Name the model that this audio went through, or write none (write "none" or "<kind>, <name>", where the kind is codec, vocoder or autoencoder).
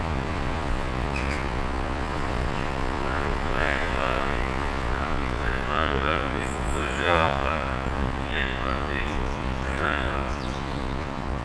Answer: vocoder, Vocos